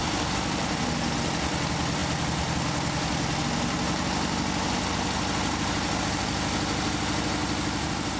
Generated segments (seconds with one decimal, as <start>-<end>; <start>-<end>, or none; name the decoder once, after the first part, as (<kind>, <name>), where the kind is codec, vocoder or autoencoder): none